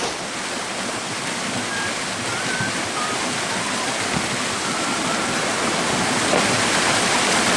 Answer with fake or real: fake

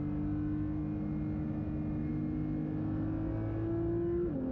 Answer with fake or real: real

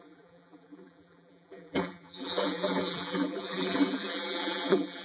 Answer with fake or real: fake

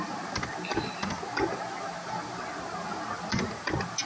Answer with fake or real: real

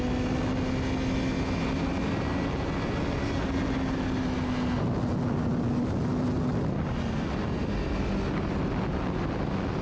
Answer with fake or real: real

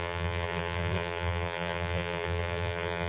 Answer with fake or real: fake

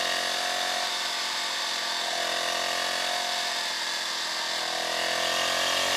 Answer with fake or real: real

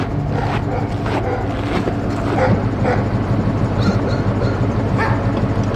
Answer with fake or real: real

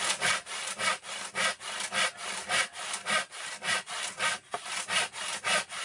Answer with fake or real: real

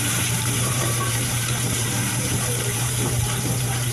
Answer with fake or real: fake